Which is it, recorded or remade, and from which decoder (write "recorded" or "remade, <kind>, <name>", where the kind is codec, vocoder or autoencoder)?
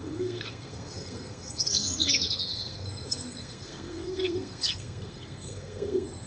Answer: remade, codec, SNAC